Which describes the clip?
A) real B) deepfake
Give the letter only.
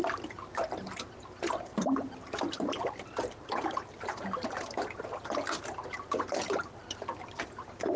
A